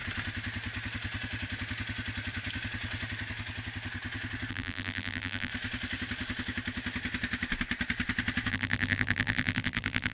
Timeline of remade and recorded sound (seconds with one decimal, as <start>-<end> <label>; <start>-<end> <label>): 0.0-4.5 recorded; 4.5-5.5 remade; 5.5-8.5 recorded; 8.5-10.1 remade